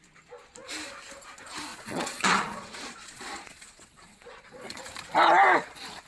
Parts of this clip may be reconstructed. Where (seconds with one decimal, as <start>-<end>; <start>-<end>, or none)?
1.7-4.8